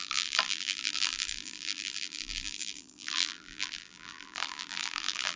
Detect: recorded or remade remade